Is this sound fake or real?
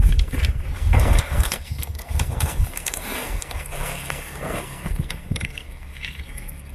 fake